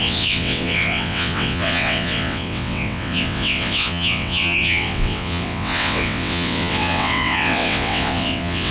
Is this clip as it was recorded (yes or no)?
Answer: no